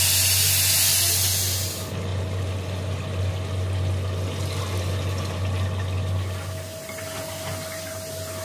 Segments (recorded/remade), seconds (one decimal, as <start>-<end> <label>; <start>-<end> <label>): 0.0-8.4 recorded